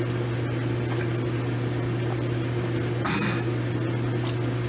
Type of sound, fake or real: real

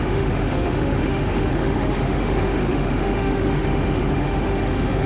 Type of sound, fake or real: fake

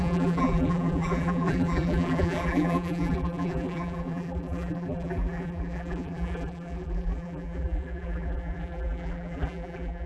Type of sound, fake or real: fake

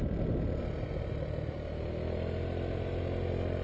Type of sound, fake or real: real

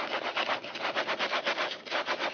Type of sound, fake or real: real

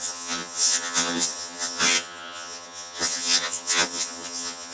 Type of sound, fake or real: fake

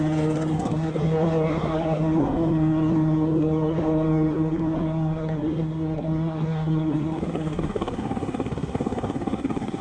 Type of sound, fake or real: fake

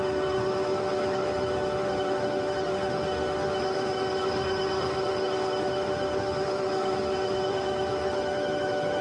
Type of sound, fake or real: fake